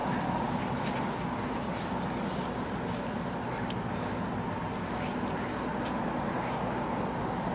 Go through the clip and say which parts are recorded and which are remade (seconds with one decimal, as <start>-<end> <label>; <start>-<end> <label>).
0.0-7.5 recorded

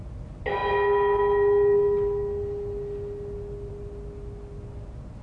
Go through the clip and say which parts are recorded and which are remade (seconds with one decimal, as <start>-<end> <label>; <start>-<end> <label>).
0.0-5.2 recorded

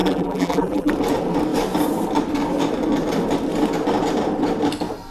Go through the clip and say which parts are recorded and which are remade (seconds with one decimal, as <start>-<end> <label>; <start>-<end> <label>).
0.0-0.9 remade; 0.9-5.1 recorded

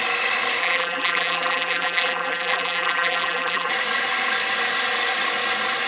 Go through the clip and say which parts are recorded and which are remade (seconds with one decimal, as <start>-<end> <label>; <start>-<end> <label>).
0.0-0.6 recorded; 0.6-3.7 remade; 3.7-5.9 recorded

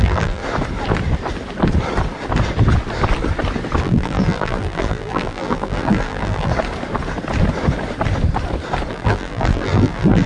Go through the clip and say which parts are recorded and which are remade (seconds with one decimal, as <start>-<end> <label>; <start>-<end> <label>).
0.0-0.4 remade; 0.4-3.8 recorded; 3.8-6.5 remade; 6.5-8.9 recorded; 8.9-10.3 remade

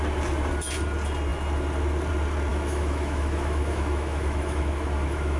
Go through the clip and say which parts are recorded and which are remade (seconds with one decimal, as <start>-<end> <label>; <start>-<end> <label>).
0.0-2.5 recorded; 2.5-5.4 remade

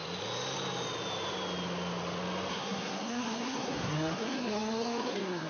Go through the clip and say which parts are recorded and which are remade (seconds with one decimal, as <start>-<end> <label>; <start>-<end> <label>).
0.0-2.5 recorded; 2.5-5.5 remade